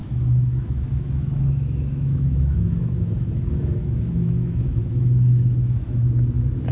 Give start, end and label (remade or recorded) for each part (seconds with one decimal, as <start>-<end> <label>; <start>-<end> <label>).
0.0-6.0 remade; 6.0-6.7 recorded